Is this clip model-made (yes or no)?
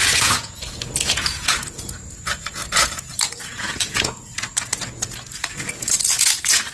yes